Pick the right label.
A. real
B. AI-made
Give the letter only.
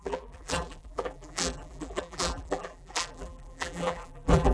B